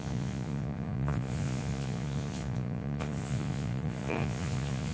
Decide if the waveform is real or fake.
fake